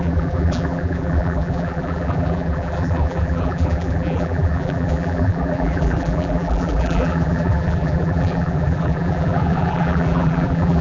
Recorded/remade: remade